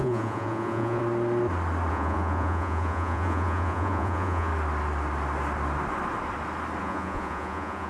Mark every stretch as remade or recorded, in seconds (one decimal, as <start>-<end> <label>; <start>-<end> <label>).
0.0-1.0 remade; 1.0-1.9 recorded; 1.9-4.5 remade; 4.5-6.8 recorded; 6.8-7.9 remade